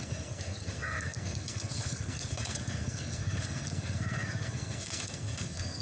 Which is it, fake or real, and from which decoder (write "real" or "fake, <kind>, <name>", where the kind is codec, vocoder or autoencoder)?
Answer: fake, codec, SNAC